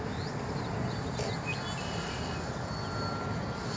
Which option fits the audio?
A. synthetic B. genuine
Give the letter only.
B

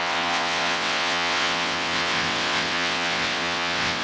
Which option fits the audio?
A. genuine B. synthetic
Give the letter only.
B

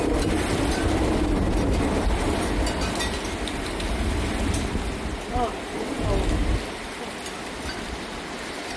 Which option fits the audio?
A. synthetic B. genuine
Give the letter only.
B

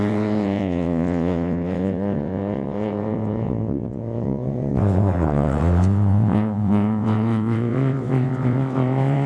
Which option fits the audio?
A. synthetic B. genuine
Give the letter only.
A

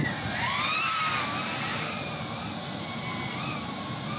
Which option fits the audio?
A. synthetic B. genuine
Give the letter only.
B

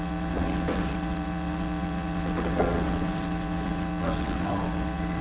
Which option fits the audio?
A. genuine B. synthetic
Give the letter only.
B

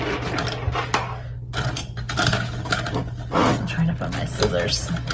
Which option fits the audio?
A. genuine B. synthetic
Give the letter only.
A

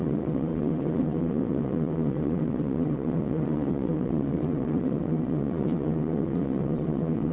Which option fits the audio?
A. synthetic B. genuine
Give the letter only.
A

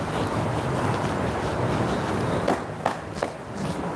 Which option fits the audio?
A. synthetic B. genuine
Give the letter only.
B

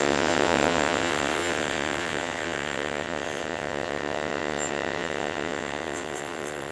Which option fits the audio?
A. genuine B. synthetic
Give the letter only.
B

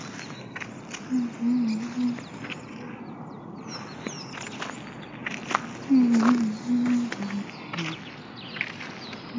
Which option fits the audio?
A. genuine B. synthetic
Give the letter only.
A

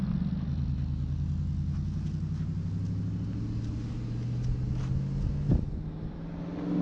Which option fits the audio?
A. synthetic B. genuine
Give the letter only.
B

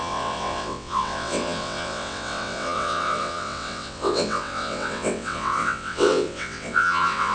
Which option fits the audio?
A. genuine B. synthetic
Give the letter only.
B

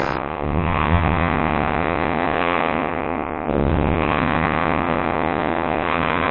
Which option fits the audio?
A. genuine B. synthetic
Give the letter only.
B